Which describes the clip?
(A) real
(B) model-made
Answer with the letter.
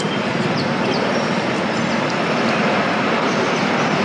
B